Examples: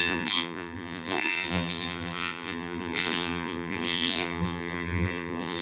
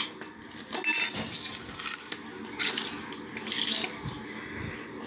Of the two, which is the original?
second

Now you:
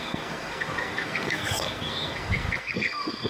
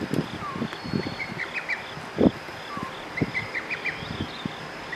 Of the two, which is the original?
second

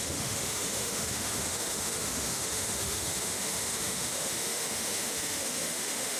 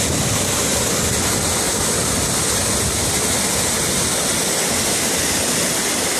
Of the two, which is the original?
second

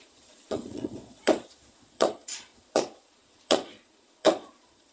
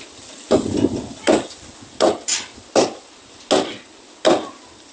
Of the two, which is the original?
second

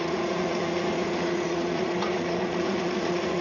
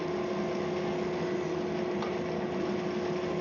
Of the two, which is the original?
second